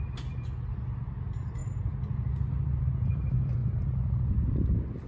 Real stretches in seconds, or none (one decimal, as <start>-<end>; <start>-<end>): 0.0-5.1